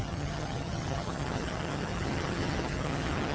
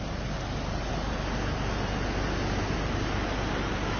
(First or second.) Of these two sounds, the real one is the second